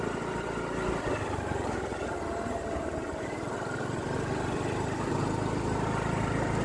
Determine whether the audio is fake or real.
real